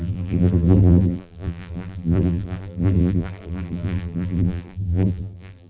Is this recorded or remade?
remade